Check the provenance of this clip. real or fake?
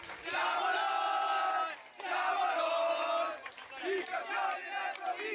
real